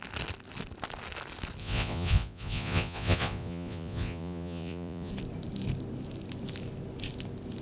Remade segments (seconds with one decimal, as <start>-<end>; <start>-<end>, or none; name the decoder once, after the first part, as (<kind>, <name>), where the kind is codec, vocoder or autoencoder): 1.6-5.1 (vocoder, Vocos)